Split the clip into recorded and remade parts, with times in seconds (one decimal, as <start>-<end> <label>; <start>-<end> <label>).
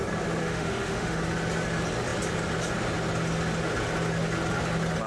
0.0-0.4 recorded; 0.4-1.2 remade; 1.2-5.1 recorded